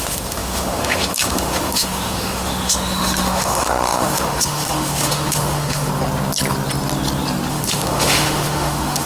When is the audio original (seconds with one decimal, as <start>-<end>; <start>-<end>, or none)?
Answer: 5.9-7.5